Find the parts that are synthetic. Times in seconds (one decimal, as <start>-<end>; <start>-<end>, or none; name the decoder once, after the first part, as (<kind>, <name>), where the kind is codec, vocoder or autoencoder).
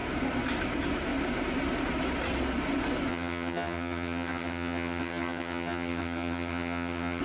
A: 3.1-7.2 (vocoder, HiFi-GAN)